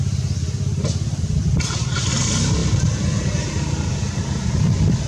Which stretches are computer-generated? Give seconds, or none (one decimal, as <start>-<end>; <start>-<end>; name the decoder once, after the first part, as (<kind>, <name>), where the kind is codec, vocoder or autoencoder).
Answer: none